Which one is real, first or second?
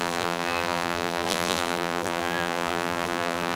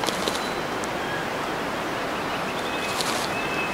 second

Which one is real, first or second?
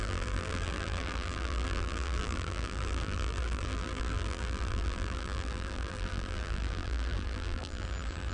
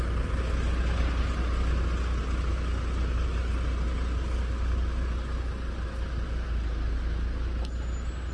second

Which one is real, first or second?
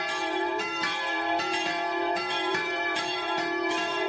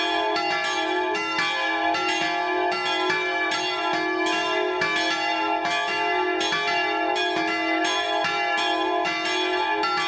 second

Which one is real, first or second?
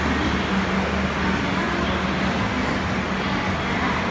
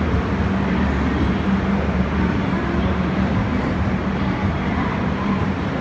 first